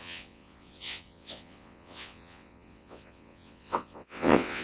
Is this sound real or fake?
fake